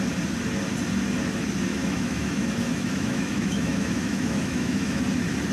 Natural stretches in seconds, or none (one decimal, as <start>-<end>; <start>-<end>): 0.0-1.7; 5.0-5.5